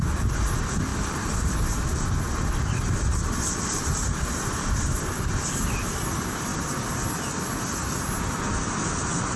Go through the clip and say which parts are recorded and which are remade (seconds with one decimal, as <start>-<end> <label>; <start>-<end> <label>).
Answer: 0.0-0.9 recorded; 0.9-5.3 remade; 5.3-9.4 recorded